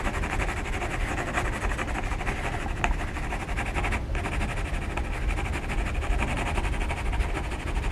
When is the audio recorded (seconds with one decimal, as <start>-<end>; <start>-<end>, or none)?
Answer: 0.0-7.9